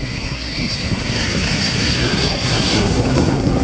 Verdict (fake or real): fake